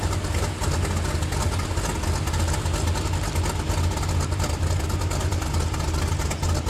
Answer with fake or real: real